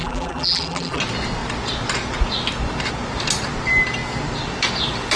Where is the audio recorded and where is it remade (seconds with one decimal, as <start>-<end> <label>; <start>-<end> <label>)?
0.0-1.0 remade; 1.0-5.2 recorded